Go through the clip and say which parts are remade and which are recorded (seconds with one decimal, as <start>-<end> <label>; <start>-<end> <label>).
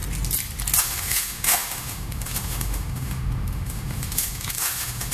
0.0-0.8 recorded; 0.8-5.1 remade